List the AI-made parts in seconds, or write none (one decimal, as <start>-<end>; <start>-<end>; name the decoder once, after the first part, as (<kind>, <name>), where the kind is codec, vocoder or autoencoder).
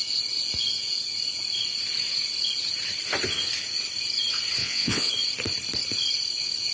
4.6-5.1 (vocoder, WaveNeXt)